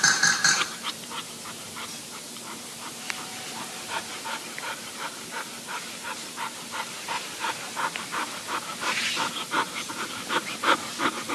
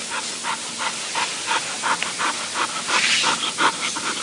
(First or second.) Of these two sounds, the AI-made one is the first